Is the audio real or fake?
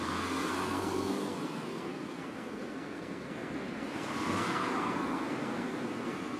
fake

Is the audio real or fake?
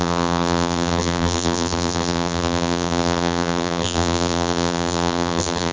fake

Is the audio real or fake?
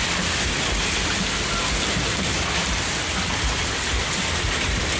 real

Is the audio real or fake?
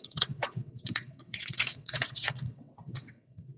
fake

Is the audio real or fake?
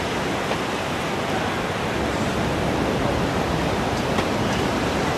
real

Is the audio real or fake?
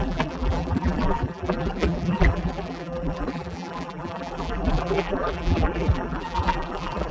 fake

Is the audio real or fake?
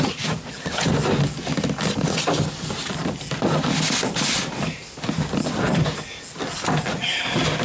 real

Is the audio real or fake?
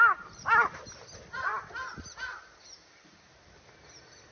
real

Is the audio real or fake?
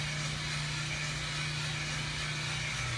real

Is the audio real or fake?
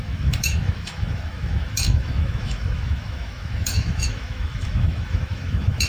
fake